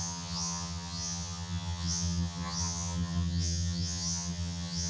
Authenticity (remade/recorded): remade